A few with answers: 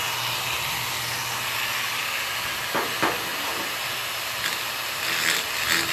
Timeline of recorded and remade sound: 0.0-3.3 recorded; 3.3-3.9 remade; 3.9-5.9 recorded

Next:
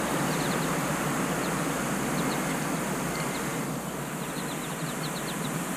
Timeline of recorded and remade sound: 0.0-5.8 recorded

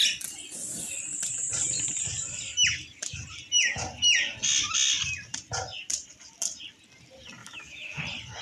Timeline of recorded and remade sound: 0.0-7.4 recorded; 7.4-8.0 remade; 8.0-8.4 recorded

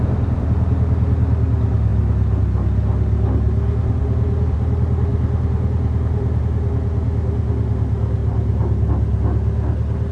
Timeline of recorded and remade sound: 0.0-5.1 recorded; 5.1-6.4 remade; 6.4-8.2 recorded; 8.2-8.9 remade; 8.9-10.1 recorded

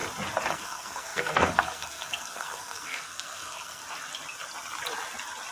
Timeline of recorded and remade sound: 0.0-0.5 recorded; 0.5-3.8 remade; 3.8-5.5 recorded